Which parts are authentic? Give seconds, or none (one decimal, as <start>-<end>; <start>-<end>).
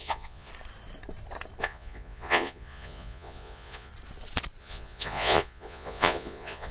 0.5-1.6; 3.9-4.6